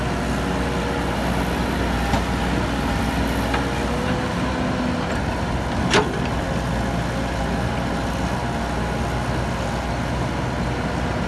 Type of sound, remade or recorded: recorded